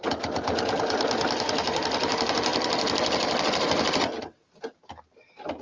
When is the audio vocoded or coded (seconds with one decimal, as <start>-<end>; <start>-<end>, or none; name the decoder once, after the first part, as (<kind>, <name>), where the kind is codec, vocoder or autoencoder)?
none

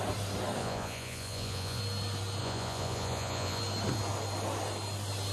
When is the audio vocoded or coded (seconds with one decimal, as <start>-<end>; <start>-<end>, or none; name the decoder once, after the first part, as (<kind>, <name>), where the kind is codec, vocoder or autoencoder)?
0.6-1.8 (vocoder, Vocos); 2.4-3.6

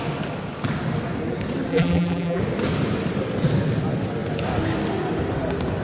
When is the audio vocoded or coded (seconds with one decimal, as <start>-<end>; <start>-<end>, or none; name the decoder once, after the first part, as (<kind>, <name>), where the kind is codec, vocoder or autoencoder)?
1.7-2.4 (vocoder, BigVGAN v2)

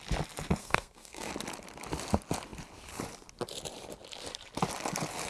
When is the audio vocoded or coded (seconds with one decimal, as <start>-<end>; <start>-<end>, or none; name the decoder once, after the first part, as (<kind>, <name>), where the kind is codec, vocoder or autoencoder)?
0.6-1.3 (codec, SNAC)